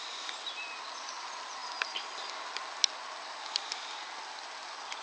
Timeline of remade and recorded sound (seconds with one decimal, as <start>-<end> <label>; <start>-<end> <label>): 0.0-5.0 recorded